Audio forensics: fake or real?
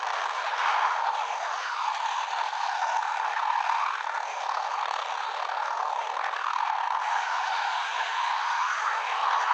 fake